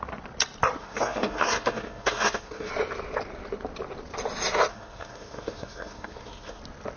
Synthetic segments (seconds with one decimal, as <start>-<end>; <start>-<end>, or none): 0.8-2.7; 4.7-6.6